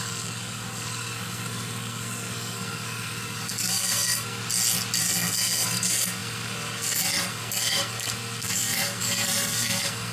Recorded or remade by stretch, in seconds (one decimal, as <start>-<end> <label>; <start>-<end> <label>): 0.0-4.4 remade; 4.4-5.0 recorded; 5.0-10.1 remade